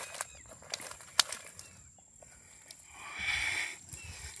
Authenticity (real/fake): real